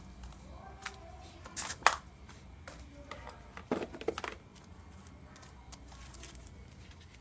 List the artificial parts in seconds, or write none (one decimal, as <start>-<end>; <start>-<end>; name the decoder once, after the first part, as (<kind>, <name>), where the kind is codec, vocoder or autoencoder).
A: none